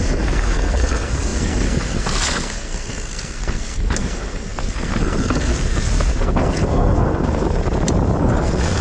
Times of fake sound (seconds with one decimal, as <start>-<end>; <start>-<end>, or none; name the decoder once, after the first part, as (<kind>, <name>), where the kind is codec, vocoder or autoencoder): 0.0-7.6 (codec, SNAC); 8.2-8.8